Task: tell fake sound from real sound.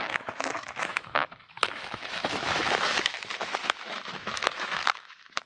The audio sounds fake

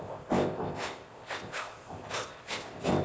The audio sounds fake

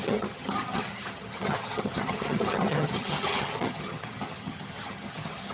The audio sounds fake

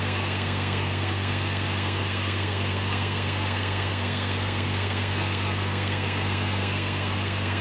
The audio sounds fake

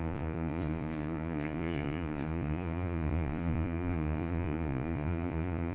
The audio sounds fake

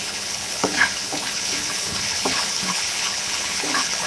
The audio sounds fake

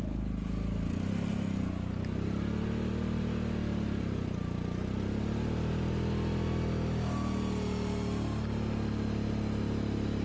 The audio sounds real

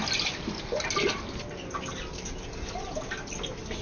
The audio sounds real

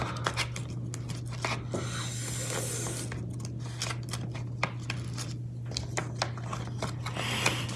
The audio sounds real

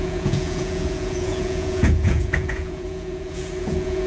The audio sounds fake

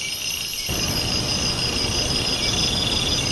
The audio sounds real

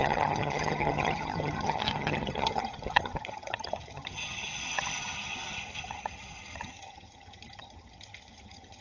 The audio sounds fake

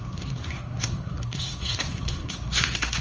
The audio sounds fake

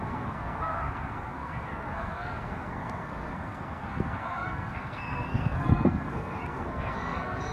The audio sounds fake